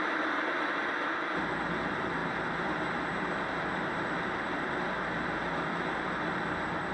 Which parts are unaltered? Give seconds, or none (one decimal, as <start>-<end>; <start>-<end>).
0.0-6.9